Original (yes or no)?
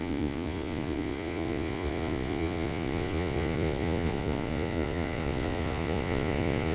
no